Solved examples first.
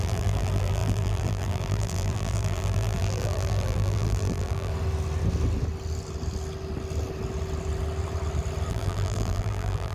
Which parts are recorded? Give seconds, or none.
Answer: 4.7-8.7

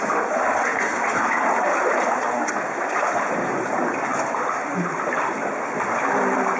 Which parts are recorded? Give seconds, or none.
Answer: 0.0-0.7; 1.3-4.1

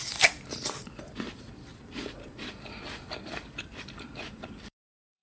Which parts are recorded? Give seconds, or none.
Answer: none

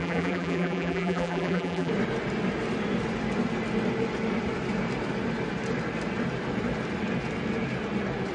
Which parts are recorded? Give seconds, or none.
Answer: 1.9-8.3

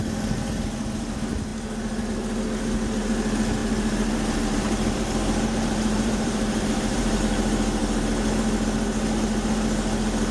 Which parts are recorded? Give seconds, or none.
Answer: 0.0-3.6; 7.2-10.3

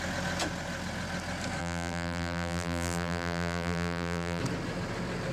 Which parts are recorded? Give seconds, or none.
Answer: 0.0-1.6; 4.4-5.3